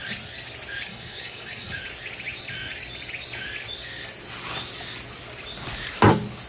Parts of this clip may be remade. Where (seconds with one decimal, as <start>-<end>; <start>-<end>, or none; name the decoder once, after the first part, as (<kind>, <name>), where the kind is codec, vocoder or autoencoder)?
0.9-1.8 (codec, DAC)

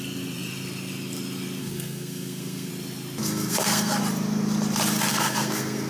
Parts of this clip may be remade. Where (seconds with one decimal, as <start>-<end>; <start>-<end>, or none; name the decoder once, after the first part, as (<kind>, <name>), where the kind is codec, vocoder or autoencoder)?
1.6-2.7 (codec, SNAC); 3.2-4.0; 5.1-5.9

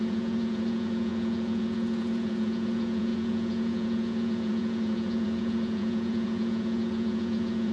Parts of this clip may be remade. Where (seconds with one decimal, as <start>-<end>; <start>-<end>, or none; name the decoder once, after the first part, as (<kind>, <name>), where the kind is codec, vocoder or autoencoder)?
0.0-7.7 (vocoder, Vocos)